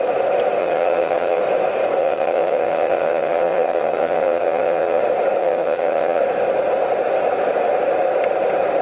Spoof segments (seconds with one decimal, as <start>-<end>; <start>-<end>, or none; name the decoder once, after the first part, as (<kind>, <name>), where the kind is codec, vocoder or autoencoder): 0.6-1.4 (vocoder, HiFi-GAN); 2.0-5.0; 5.4-6.2